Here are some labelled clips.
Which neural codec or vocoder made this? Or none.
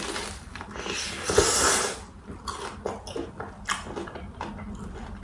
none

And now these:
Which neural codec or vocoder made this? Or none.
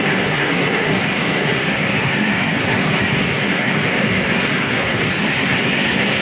codec, SNAC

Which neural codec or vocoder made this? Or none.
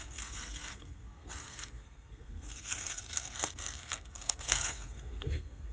codec, SNAC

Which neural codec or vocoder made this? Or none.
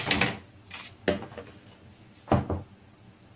none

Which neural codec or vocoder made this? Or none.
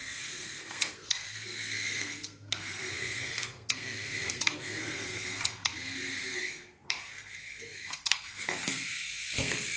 codec, SNAC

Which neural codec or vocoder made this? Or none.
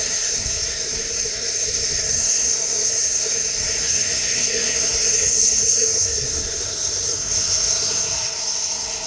codec, SNAC